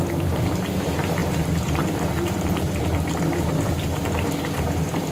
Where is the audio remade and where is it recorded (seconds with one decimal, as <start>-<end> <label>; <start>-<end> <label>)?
0.0-5.1 remade

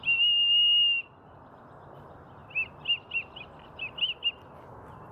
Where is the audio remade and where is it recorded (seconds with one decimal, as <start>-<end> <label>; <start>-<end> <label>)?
0.0-5.1 recorded

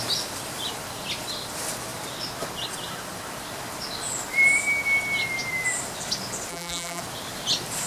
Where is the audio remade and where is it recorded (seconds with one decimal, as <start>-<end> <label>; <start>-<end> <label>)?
0.0-6.5 recorded; 6.5-7.0 remade; 7.0-7.9 recorded

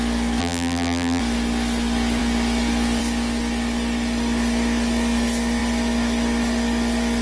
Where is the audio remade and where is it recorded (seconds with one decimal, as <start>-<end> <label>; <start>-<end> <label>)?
0.0-0.4 recorded; 0.4-1.2 remade; 1.2-7.2 recorded

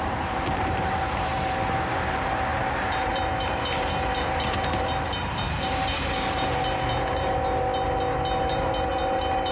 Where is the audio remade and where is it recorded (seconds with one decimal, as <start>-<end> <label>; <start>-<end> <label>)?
0.0-9.5 remade

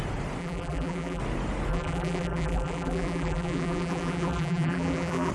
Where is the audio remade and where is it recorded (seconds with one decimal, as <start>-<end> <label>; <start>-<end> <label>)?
0.0-0.4 recorded; 0.4-1.2 remade; 1.2-1.7 recorded; 1.7-5.3 remade

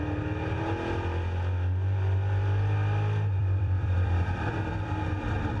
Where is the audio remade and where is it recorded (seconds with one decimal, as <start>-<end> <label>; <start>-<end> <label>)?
0.0-3.4 recorded; 3.4-5.6 remade